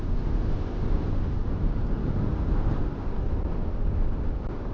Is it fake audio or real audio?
real